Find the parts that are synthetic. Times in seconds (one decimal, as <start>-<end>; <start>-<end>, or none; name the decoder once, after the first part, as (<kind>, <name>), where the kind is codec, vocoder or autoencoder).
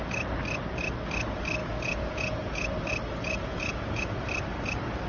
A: 1.6-2.8 (vocoder, Vocos); 3.2-4.2